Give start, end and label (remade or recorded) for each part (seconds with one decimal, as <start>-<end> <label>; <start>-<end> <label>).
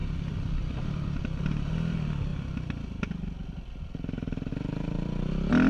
0.0-1.2 remade; 1.2-2.3 recorded; 2.3-4.5 remade; 4.5-5.7 recorded